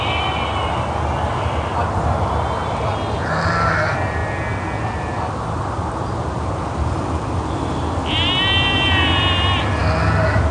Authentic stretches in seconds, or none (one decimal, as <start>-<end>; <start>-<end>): 0.0-10.5

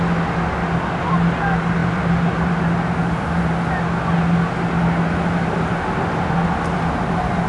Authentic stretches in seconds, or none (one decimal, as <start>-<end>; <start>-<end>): 0.0-7.5

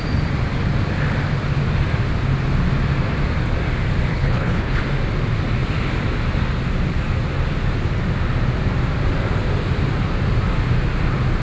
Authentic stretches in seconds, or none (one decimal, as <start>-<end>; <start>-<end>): 0.0-4.1; 4.8-11.4

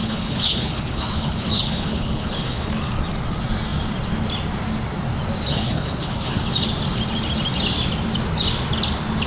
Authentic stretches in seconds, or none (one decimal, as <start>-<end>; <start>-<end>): 2.7-5.5; 6.4-9.3

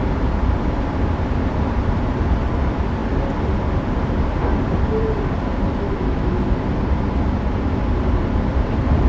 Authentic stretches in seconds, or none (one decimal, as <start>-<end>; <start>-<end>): 0.0-9.1

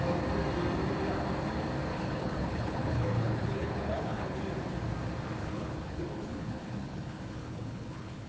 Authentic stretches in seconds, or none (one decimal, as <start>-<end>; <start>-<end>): 0.0-1.9; 4.4-5.4

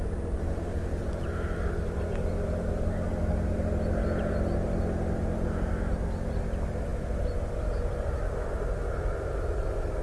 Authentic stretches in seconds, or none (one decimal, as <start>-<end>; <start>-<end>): 0.0-10.0